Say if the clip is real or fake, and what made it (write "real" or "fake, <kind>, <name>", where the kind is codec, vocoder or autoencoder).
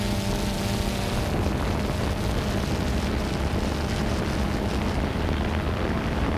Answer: real